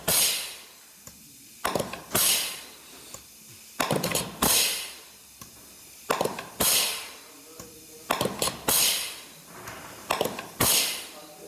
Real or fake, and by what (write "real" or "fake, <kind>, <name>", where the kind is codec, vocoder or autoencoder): real